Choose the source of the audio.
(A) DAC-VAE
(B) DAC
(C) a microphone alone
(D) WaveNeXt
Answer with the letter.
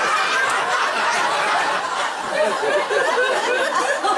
C